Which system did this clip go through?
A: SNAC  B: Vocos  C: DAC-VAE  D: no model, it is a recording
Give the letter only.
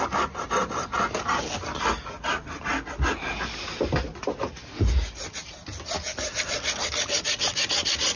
D